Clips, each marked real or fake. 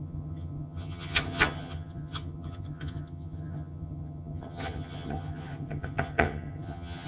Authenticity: fake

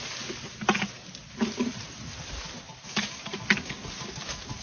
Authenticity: real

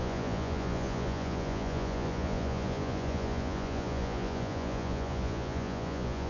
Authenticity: fake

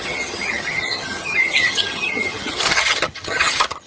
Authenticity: fake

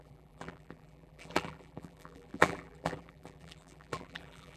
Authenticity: fake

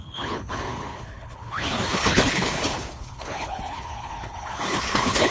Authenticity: fake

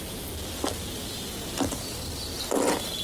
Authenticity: real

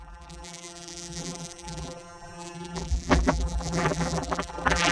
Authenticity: fake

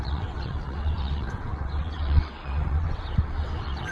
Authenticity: fake